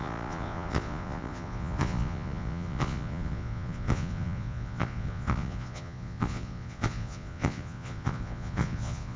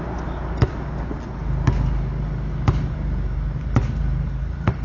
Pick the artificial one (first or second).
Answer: first